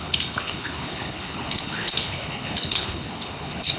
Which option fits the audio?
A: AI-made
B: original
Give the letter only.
A